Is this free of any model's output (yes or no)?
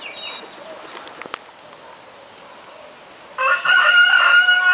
yes